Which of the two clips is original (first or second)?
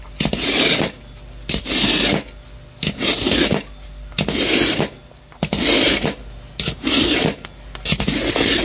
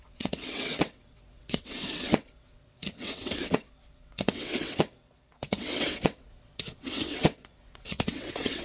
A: first